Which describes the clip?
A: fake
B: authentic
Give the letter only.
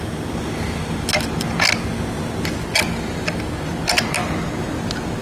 B